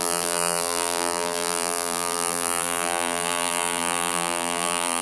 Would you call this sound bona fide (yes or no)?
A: no